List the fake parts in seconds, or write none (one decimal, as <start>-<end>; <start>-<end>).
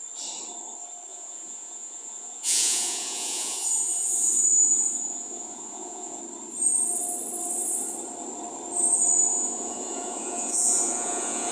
1.1-6.2; 9.3-11.5